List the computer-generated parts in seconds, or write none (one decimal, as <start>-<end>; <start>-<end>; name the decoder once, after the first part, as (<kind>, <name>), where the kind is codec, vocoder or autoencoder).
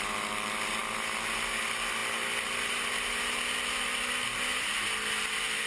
none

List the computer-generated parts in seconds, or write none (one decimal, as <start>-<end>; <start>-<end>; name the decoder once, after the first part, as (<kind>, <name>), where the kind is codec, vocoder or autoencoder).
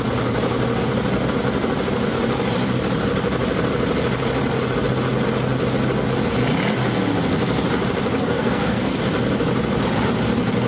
8.2-8.9 (codec, SNAC)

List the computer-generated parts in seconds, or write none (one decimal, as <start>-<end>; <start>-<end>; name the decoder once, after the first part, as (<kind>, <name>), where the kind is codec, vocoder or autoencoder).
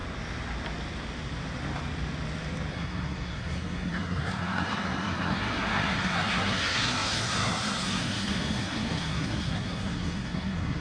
2.7-10.8 (codec, SNAC)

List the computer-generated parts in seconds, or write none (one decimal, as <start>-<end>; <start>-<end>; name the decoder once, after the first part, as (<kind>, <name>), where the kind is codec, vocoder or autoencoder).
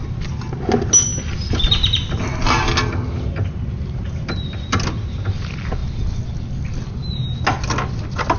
none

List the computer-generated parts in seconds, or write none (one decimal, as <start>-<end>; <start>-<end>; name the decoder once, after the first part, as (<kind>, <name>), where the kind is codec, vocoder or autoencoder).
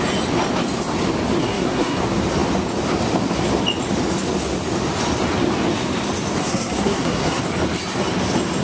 1.4-2.0 (codec, SNAC); 6.4-7.4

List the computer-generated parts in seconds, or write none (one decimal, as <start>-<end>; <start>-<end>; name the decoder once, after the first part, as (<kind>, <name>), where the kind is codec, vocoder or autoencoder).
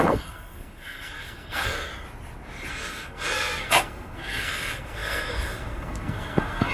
0.0-1.9 (codec, SNAC); 2.7-6.7